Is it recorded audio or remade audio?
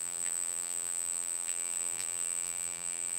remade